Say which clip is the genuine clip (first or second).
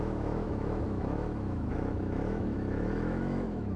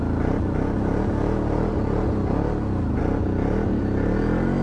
second